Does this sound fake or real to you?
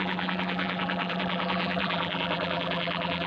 fake